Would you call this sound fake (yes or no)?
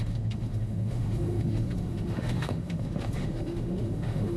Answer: yes